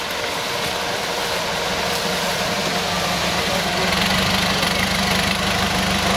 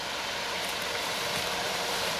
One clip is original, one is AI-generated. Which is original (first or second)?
first